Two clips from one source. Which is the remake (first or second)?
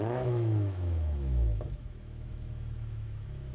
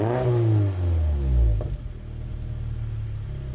first